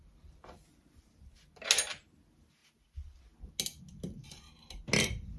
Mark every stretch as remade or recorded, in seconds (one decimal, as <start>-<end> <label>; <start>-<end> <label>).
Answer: 0.0-2.6 recorded; 2.6-3.2 remade; 3.2-5.4 recorded